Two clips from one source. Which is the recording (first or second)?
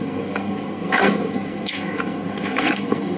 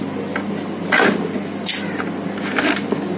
second